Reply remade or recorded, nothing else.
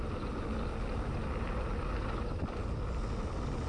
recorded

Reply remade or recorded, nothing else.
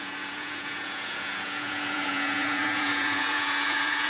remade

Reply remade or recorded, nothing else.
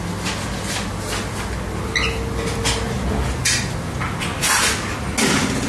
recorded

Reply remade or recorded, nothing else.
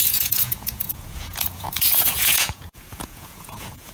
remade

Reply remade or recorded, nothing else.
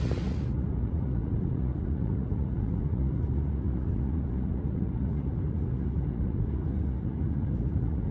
remade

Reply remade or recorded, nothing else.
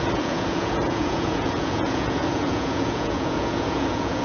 remade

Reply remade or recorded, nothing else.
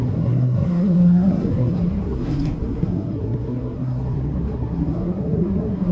remade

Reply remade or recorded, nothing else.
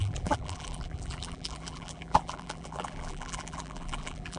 remade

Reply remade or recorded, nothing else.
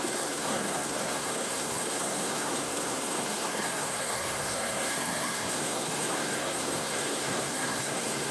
remade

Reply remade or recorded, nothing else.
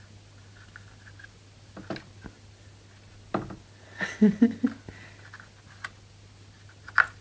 recorded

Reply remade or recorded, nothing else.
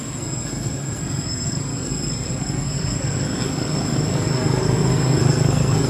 remade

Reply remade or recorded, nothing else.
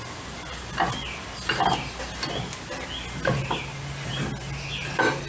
recorded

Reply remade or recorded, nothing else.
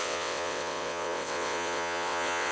remade